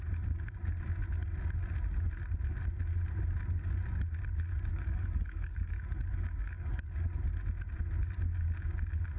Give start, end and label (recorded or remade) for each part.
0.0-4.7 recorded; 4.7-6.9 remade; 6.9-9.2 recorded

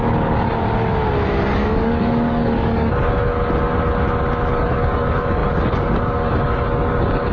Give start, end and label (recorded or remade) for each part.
0.0-0.6 remade; 0.6-1.3 recorded; 1.3-3.3 remade; 3.3-4.5 recorded; 4.5-7.3 remade